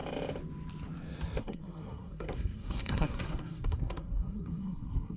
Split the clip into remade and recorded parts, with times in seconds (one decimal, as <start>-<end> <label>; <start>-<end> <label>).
0.0-1.4 recorded; 1.4-5.2 remade